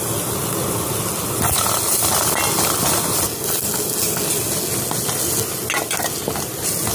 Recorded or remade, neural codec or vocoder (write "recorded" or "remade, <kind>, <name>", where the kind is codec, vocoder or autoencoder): recorded